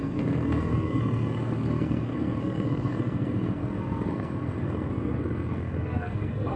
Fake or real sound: fake